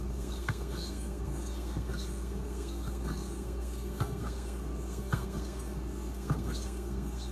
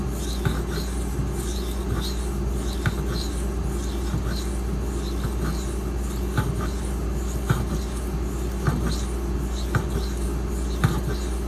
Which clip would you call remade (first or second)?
first